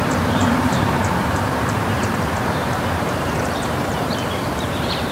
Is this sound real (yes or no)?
no